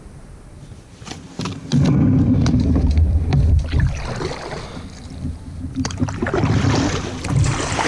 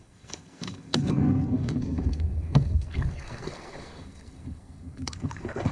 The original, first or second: first